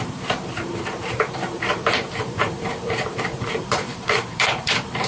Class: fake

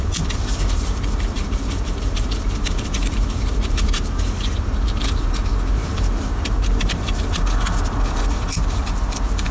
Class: fake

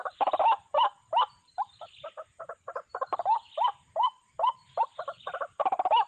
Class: fake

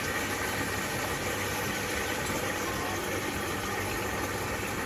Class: real